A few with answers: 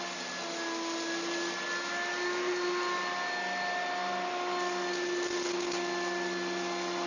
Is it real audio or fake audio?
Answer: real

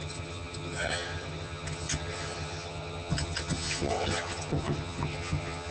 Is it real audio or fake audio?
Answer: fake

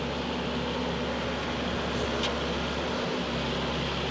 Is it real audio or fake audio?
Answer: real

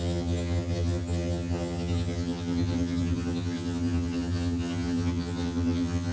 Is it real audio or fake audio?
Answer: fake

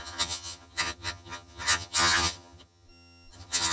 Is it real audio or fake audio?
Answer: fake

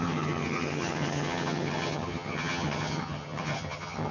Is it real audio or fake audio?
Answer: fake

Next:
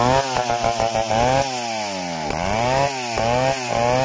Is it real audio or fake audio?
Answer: real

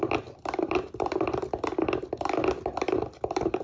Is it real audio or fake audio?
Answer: real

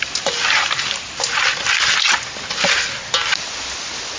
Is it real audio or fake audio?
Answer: real